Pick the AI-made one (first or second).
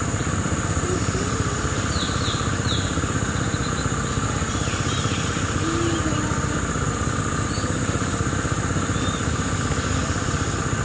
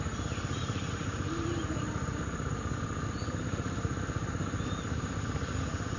second